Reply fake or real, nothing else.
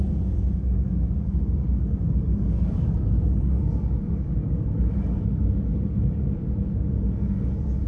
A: fake